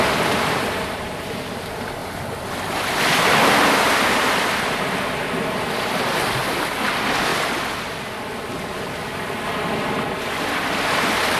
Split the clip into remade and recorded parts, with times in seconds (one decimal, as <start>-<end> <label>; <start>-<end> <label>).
0.0-11.4 recorded

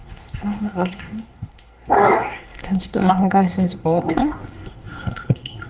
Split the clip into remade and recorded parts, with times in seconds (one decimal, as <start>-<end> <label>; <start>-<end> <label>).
0.0-5.7 remade

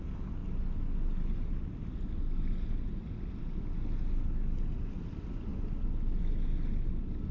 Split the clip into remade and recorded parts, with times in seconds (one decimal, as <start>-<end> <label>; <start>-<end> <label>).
0.0-7.3 recorded

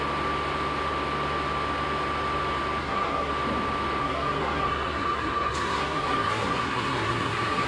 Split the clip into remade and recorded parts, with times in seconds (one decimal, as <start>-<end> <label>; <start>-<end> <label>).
0.0-2.8 recorded; 2.8-3.3 remade; 3.3-4.0 recorded; 4.0-7.7 remade

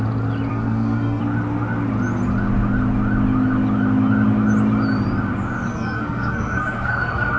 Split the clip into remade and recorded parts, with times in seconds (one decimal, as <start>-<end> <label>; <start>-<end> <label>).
0.0-0.5 recorded; 0.5-1.2 remade; 1.2-5.7 recorded; 5.7-7.4 remade